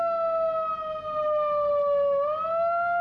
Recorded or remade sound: recorded